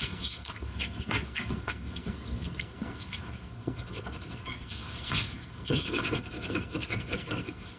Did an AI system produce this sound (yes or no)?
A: yes